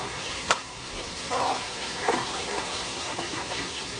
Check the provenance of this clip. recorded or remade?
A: remade